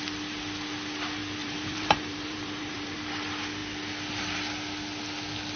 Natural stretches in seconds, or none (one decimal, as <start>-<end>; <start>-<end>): 0.0-1.4; 3.0-5.6